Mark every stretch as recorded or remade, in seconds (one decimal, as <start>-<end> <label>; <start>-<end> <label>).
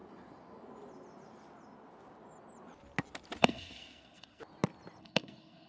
0.0-3.4 recorded; 3.4-4.4 remade; 4.4-5.0 recorded; 5.0-5.7 remade